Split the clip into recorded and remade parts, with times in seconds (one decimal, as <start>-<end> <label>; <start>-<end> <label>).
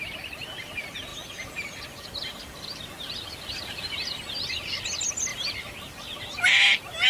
0.0-7.1 recorded